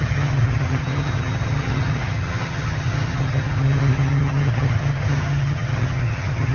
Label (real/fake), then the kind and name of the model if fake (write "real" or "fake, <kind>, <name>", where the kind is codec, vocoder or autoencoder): fake, vocoder, HiFi-GAN